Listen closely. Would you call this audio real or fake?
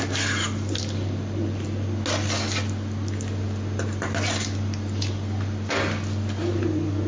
real